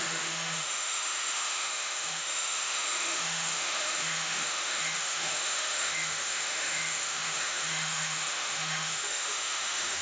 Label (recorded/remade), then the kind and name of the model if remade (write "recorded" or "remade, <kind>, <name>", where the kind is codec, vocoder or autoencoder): remade, autoencoder, DAC-VAE